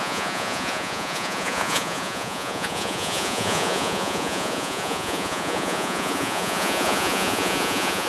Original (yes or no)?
no